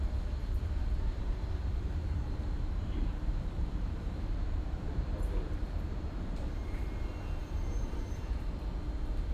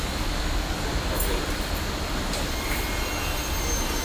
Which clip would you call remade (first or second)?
first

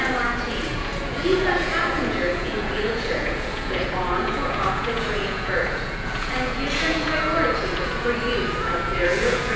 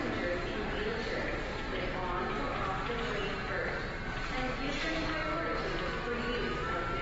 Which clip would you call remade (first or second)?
first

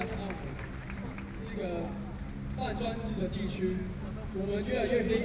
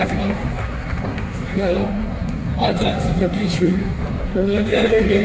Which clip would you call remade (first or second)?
second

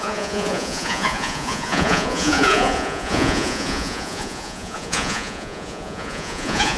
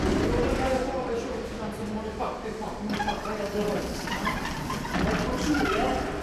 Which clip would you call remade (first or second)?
first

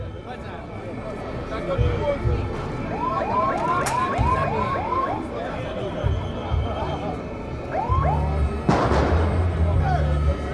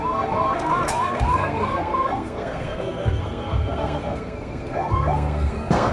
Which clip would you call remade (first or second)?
second